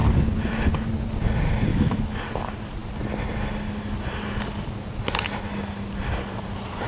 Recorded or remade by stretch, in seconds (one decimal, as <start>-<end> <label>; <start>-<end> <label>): 0.0-1.7 recorded; 1.7-2.2 remade; 2.2-6.9 recorded